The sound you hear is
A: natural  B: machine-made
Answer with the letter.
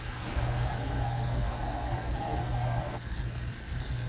B